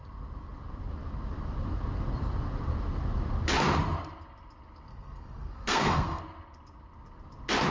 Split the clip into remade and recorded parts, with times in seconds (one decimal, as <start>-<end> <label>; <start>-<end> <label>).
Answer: 0.0-4.9 recorded; 4.9-6.2 remade; 6.2-7.7 recorded

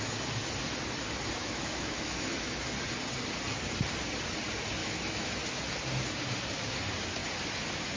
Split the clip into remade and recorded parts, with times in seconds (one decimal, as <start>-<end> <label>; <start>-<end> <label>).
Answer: 0.0-1.4 recorded; 1.4-2.6 remade; 2.6-4.8 recorded; 4.8-5.4 remade; 5.4-8.0 recorded

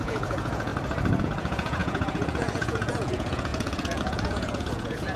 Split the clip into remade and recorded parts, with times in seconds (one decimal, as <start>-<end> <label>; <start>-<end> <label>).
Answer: 0.0-0.7 remade; 0.7-1.2 recorded; 1.2-5.2 remade

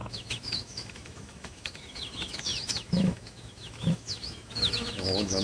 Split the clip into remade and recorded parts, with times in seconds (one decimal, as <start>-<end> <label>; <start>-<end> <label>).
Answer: 0.0-5.4 remade

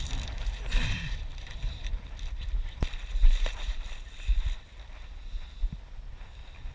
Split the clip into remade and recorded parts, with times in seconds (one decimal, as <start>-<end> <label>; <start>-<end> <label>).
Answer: 0.0-6.7 remade